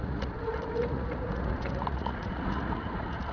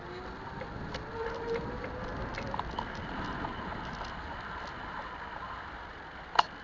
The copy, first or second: first